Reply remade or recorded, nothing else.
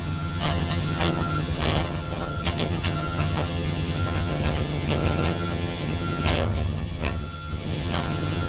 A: remade